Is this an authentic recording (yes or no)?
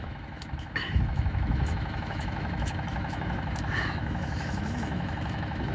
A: no